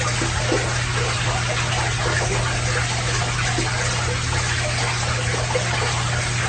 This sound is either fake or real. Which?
real